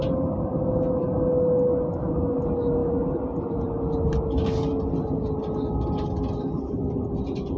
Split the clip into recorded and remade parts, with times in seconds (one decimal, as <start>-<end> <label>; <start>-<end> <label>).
0.0-7.6 recorded